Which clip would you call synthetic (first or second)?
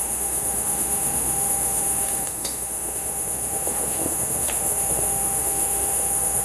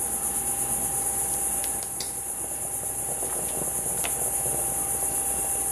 first